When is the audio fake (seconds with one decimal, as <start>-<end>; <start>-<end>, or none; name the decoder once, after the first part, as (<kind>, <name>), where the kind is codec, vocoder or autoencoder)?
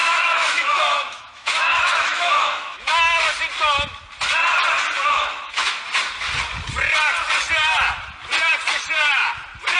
0.0-2.9 (autoencoder, DAC-VAE); 5.0-5.8